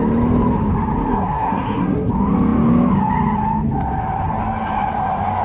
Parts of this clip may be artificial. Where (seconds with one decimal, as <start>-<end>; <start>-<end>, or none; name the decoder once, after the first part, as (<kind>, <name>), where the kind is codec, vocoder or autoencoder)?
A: 1.1-2.1 (codec, SNAC)